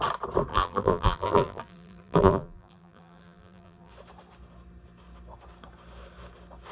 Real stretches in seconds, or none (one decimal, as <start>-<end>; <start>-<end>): 0.0-0.5; 3.9-6.7